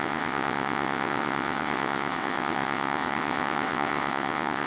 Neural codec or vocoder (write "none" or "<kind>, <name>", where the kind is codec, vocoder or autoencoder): vocoder, WaveNeXt